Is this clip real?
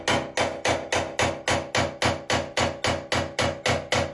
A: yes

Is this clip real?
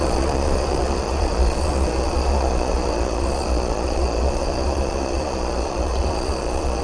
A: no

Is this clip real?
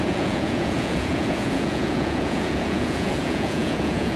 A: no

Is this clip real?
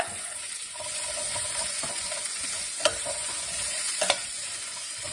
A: no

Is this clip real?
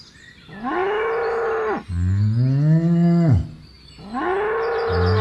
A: yes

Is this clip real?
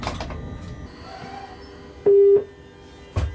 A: yes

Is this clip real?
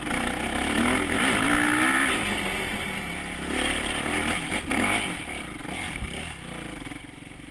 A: yes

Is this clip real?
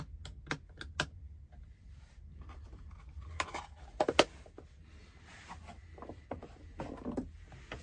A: yes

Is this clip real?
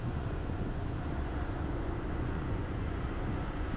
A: no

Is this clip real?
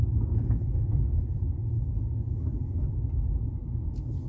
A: yes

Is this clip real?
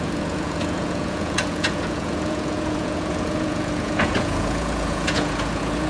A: no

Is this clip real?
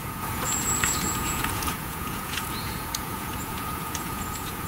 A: no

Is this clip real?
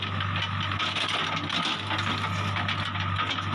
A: yes